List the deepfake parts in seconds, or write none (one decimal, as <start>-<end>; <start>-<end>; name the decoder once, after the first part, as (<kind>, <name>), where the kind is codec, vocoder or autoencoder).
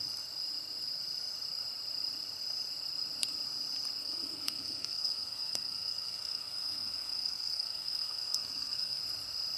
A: 4.0-9.0 (codec, SNAC)